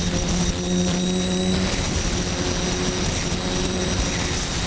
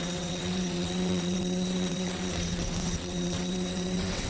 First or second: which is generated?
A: second